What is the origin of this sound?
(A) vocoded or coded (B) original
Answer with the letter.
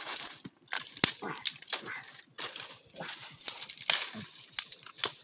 B